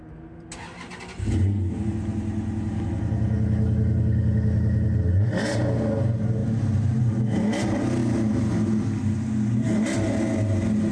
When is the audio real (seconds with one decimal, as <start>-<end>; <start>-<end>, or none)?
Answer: 0.0-6.4; 7.1-10.9